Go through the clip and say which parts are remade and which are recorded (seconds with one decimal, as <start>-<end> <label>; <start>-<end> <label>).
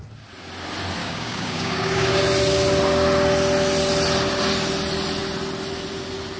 0.0-1.0 recorded; 1.0-2.2 remade; 2.2-6.4 recorded